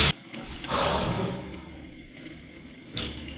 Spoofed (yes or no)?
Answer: yes